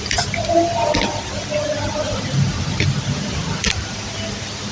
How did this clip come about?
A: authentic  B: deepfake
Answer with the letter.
A